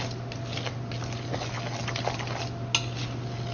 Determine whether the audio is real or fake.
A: real